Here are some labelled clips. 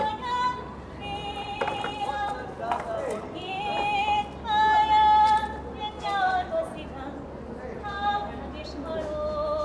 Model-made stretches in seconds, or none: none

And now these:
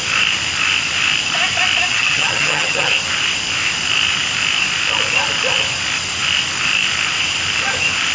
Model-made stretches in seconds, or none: 1.9-2.9 (vocoder, HiFi-GAN)

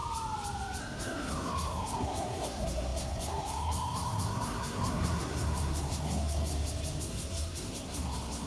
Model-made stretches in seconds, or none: 0.8-6.5 (codec, SNAC); 7.0-8.5

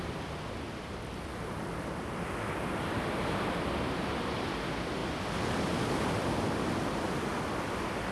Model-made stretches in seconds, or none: none

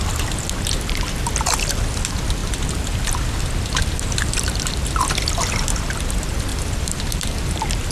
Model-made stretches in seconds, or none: 6.5-7.9 (vocoder, BigVGAN v2)

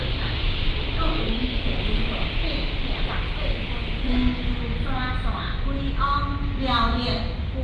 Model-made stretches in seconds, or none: 1.1-1.8 (codec, SNAC); 4.0-4.5

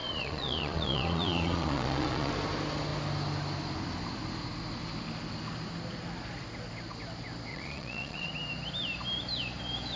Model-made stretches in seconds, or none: 0.0-2.3 (vocoder, Vocos); 7.5-8.3

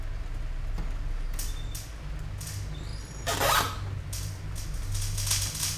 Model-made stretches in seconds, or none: none